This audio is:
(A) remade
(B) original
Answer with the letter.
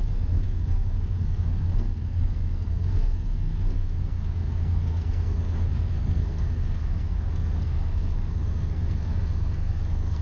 A